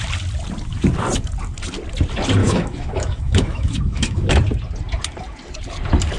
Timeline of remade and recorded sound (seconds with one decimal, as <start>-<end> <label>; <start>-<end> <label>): 0.0-2.4 recorded; 2.4-4.3 remade; 4.3-6.2 recorded